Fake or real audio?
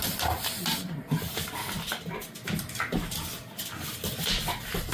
real